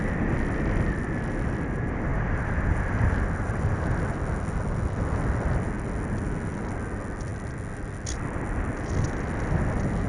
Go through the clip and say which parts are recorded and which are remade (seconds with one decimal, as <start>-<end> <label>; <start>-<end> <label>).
0.0-2.1 recorded; 2.1-4.0 remade; 4.0-10.1 recorded